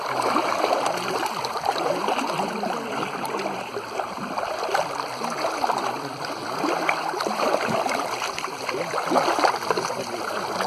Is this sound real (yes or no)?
no